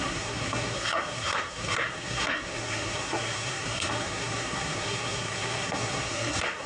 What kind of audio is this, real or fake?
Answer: fake